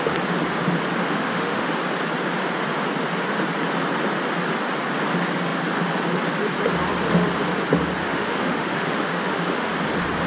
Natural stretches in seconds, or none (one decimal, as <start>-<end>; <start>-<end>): 0.0-1.0; 1.7-8.0; 9.7-10.3